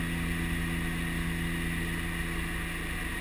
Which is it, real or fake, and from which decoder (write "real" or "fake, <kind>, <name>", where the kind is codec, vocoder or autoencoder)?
real